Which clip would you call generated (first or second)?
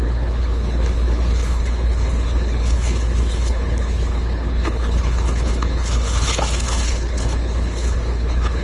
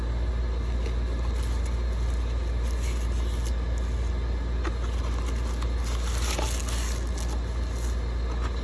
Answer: first